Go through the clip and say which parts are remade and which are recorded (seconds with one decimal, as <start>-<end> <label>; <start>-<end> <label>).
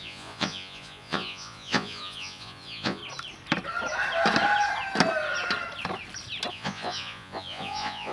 0.0-3.0 remade; 3.0-6.5 recorded; 6.5-8.1 remade